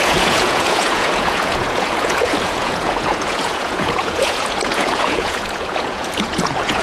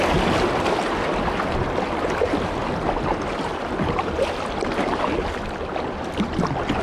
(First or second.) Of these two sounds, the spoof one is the first